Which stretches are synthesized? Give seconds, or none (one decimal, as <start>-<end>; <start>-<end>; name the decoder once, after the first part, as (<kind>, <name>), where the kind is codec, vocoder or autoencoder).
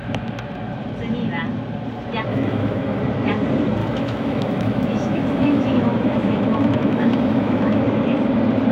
2.3-3.0 (autoencoder, DAC-VAE); 3.8-7.8